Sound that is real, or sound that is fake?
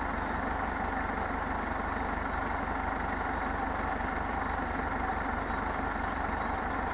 real